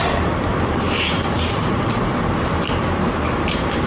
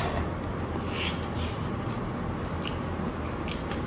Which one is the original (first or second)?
second